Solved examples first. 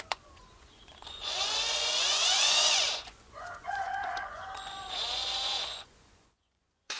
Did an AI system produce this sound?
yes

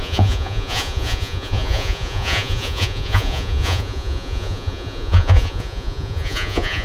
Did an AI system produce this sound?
yes